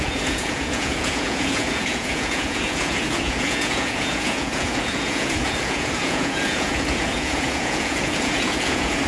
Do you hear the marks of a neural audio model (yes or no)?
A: yes